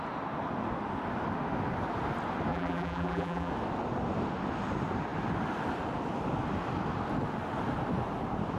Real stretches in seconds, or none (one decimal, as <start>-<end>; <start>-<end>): 0.0-2.5; 3.5-8.6